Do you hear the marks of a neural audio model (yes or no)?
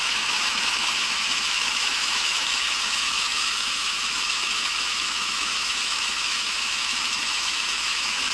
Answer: yes